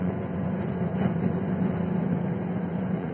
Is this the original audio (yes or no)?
no